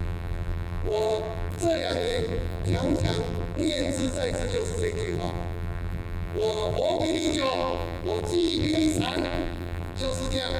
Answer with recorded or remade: remade